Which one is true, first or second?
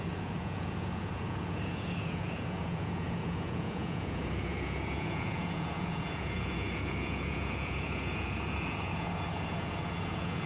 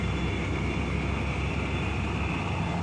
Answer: second